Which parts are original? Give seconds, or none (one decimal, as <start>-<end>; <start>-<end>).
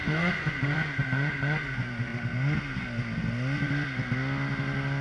2.1-5.0